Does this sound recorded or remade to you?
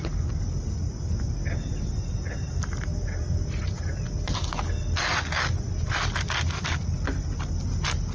recorded